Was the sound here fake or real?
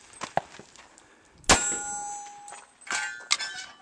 real